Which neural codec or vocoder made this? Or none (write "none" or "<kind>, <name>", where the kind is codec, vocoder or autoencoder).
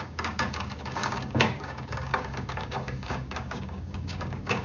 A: codec, DAC